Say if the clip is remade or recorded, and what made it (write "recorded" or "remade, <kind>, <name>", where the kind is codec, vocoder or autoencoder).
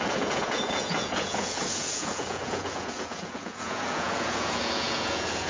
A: remade, vocoder, Vocos